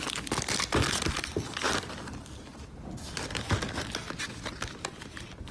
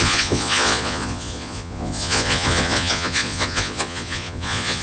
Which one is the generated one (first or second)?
second